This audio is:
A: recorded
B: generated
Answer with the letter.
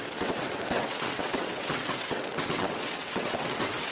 B